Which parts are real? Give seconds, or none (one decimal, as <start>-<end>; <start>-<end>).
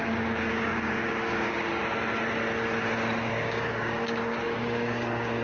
1.7-3.3